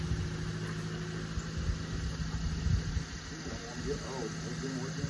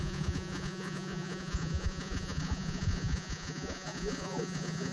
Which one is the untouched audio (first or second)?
first